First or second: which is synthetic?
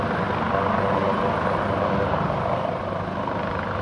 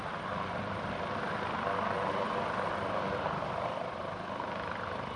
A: second